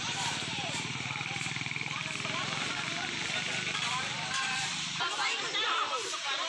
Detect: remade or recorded remade